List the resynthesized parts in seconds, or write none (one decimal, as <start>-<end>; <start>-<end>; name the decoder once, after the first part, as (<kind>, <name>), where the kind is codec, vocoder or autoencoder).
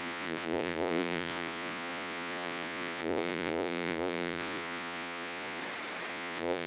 0.0-5.6 (vocoder, Vocos); 6.1-6.7